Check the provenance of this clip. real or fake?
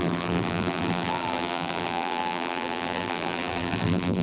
fake